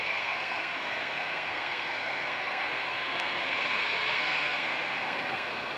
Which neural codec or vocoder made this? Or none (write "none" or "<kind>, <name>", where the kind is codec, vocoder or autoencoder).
codec, SNAC